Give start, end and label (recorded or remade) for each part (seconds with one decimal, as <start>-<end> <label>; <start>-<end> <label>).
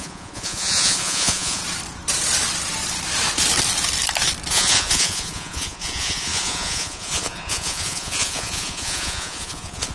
0.0-1.6 remade; 1.6-4.5 recorded; 4.5-9.9 remade